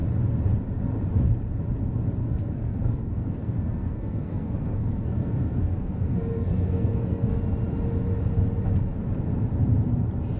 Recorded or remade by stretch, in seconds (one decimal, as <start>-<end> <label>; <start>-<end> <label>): 0.0-2.2 recorded; 2.2-7.4 remade; 7.4-10.4 recorded